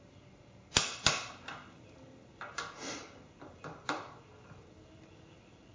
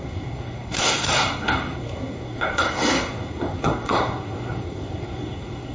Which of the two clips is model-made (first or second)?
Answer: second